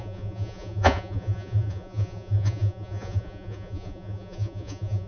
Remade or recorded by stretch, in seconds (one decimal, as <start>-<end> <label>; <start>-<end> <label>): 0.0-5.1 remade